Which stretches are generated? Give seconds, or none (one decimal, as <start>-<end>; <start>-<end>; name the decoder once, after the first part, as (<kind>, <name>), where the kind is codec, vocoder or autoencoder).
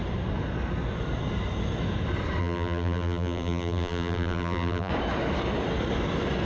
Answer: 2.4-4.9 (vocoder, BigVGAN v2)